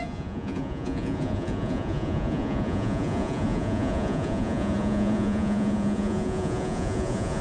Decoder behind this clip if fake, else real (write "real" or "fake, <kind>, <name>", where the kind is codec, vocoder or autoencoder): fake, vocoder, Vocos